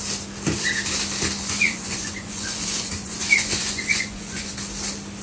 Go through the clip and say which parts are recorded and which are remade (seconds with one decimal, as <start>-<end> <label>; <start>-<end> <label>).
0.0-1.4 recorded; 1.4-4.5 remade; 4.5-5.2 recorded